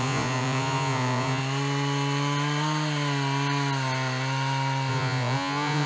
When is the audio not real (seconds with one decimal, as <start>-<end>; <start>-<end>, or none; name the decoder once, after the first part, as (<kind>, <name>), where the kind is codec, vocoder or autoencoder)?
0.0-1.4 (vocoder, Vocos); 4.9-5.9